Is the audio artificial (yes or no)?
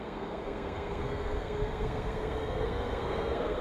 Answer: yes